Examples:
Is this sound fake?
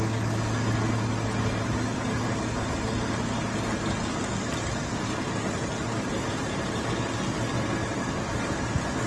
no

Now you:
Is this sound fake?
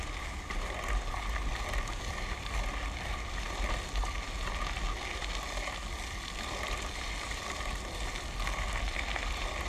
no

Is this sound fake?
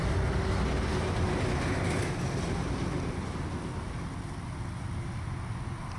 no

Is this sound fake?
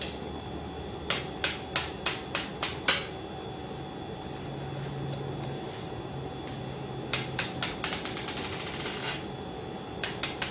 no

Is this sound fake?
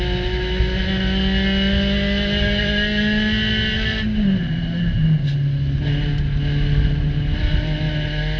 no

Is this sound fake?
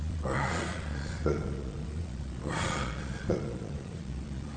yes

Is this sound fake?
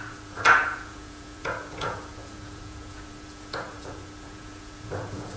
yes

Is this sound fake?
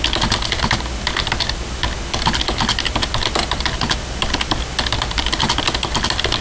no